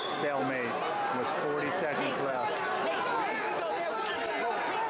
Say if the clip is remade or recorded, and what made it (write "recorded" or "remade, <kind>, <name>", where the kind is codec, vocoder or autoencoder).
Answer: recorded